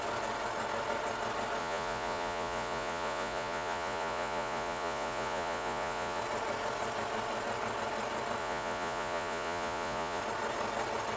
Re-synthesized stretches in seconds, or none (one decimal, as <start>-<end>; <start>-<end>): 1.6-6.2; 8.4-10.2